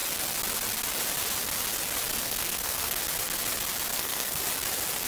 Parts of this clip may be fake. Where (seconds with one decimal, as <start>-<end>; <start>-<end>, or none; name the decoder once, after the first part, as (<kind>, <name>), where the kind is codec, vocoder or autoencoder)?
2.2-3.0 (codec, SNAC); 3.9-4.4